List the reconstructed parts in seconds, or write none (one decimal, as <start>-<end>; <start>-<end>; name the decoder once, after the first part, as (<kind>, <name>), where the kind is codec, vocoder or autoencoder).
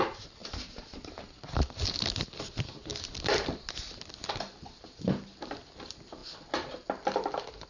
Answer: 0.4-1.0 (vocoder, Vocos)